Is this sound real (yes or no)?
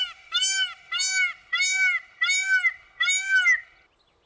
yes